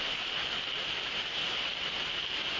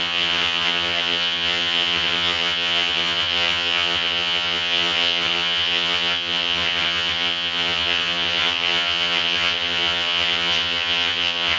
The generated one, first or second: second